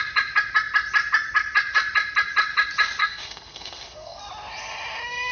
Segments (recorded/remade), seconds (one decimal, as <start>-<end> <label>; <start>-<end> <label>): 0.0-3.0 recorded; 3.0-4.2 remade; 4.2-5.3 recorded